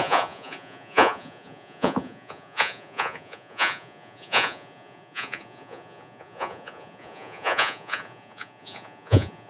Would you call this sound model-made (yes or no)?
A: yes